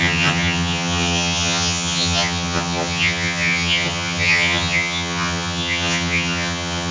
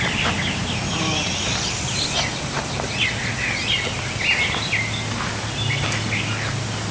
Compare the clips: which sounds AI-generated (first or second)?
first